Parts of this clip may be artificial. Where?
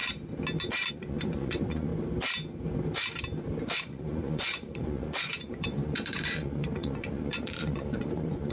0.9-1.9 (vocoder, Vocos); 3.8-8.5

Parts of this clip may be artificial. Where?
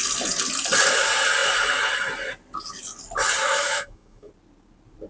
3.4-4.3 (autoencoder, DAC-VAE)